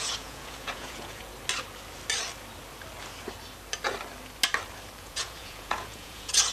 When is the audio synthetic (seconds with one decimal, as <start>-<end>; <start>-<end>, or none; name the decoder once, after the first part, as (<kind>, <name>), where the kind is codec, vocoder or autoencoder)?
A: 0.0-1.3 (vocoder, Vocos); 5.0-6.5

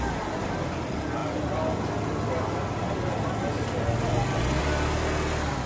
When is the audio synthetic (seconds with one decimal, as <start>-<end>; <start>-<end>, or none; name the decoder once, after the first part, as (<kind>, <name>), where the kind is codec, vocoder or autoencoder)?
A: none

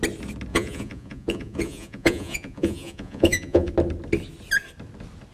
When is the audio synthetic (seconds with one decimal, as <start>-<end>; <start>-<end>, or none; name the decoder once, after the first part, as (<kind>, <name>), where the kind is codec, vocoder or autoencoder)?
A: 0.5-3.7 (vocoder, Vocos)

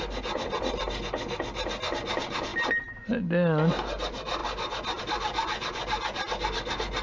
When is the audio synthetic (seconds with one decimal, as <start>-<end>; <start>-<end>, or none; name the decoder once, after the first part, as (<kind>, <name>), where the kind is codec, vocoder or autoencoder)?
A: none

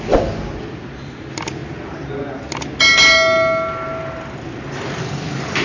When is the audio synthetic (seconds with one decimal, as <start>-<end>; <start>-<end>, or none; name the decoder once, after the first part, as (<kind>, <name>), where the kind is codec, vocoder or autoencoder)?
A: none

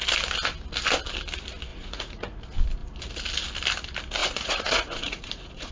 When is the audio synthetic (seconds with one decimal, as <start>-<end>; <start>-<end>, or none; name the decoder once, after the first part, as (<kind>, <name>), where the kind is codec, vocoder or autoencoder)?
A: 1.7-2.4 (vocoder, Vocos); 4.2-5.7

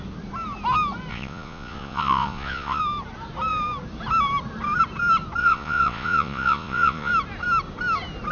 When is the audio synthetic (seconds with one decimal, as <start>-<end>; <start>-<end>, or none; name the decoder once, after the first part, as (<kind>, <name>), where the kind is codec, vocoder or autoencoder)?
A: 1.1-2.8 (vocoder, Vocos); 5.4-7.1

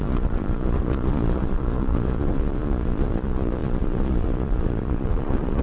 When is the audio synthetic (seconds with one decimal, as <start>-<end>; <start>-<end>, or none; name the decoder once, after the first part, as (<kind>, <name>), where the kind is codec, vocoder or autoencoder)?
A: 0.0-5.6 (vocoder, Vocos)